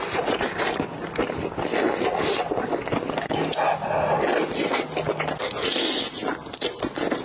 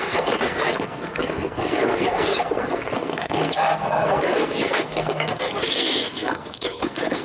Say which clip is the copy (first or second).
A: second